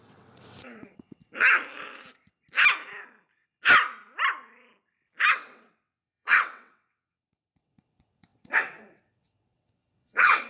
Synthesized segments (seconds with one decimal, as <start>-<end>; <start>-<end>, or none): 0.0-1.2; 5.3-10.5